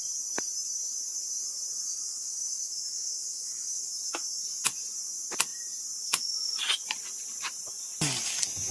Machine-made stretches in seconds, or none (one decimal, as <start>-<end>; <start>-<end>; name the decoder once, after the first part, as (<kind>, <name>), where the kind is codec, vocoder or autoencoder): 1.9-3.9 (autoencoder, DAC-VAE)